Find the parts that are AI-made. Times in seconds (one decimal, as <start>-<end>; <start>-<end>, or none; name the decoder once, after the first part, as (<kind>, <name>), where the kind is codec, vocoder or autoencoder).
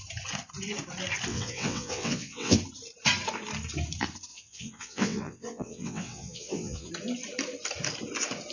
1.3-2.6 (vocoder, WaveNeXt); 4.3-6.9